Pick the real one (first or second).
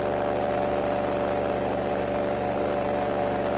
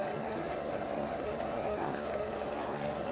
first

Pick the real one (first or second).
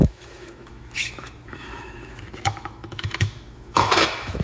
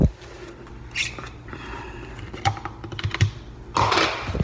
second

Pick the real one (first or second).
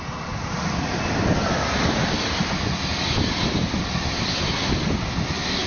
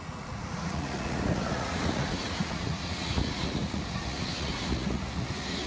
first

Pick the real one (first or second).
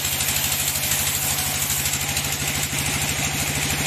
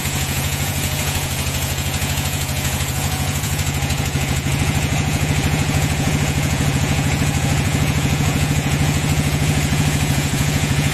first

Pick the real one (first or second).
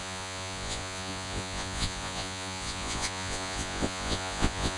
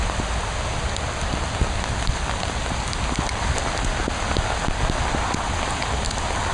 second